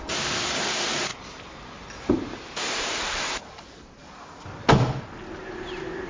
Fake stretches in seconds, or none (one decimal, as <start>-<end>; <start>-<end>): 0.0-1.1; 2.7-4.0; 5.4-6.1

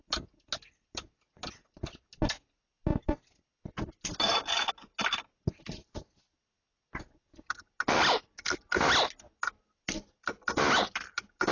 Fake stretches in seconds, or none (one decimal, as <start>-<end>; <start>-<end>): none

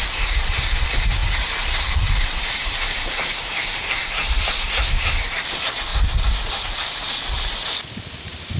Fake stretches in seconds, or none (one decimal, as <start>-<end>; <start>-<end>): 0.0-5.9; 8.2-8.6

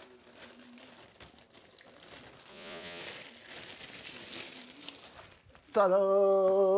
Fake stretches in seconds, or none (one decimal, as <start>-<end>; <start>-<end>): 2.5-3.0

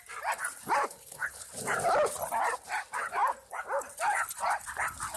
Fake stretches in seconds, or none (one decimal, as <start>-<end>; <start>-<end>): 0.8-1.5

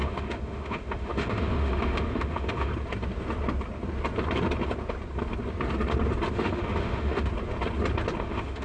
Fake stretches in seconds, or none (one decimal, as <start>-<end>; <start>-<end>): 0.0-2.7; 6.3-7.3; 8.2-8.6

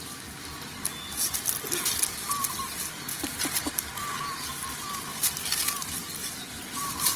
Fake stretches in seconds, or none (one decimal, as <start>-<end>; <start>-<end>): none